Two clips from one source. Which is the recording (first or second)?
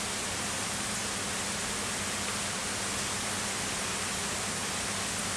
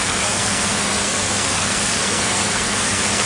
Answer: first